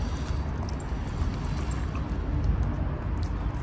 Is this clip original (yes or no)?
yes